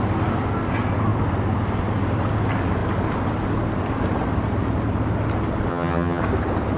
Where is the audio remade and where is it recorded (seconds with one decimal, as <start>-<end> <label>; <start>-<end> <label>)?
0.0-5.7 recorded; 5.7-6.2 remade; 6.2-6.8 recorded